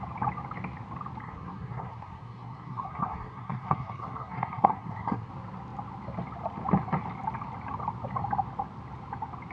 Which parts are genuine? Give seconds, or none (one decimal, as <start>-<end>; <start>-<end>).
0.0-1.2; 5.3-9.5